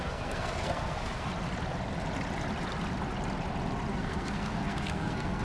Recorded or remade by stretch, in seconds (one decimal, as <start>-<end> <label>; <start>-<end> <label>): 0.0-1.3 remade; 1.3-3.9 recorded; 3.9-5.4 remade